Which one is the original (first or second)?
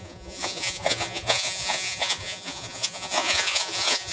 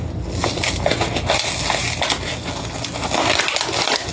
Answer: second